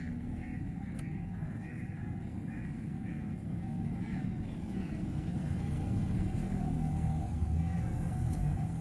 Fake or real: fake